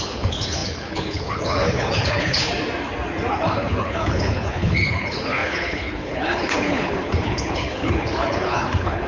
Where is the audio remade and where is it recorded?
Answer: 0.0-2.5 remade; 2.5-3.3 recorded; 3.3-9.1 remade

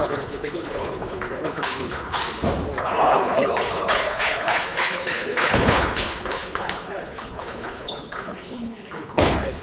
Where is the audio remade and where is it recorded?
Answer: 0.0-2.2 remade; 2.2-2.8 recorded; 2.8-9.6 remade

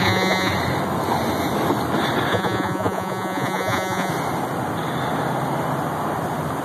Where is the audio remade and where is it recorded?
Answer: 0.0-0.5 remade; 0.5-2.3 recorded; 2.3-4.1 remade; 4.1-6.6 recorded

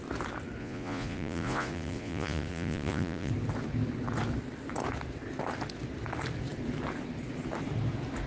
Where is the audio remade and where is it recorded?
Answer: 0.0-0.6 recorded; 0.6-3.3 remade; 3.3-8.3 recorded

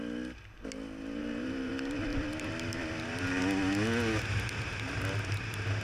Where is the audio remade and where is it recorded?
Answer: 0.0-1.2 recorded; 1.2-1.7 remade; 1.7-2.1 recorded; 2.1-3.4 remade; 3.4-5.8 recorded

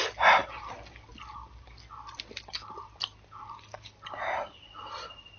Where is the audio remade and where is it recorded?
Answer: 0.0-5.4 recorded

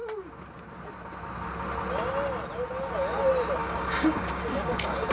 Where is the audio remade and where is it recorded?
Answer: 0.0-3.6 recorded; 3.6-5.1 remade

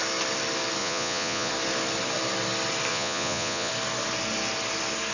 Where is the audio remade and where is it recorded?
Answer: 0.0-0.8 recorded; 0.8-1.5 remade; 1.5-2.9 recorded; 2.9-3.7 remade; 3.7-5.1 recorded